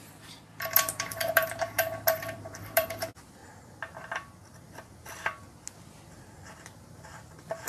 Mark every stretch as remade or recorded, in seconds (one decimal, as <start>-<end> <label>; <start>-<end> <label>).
0.0-3.4 remade; 3.4-6.8 recorded; 6.8-7.7 remade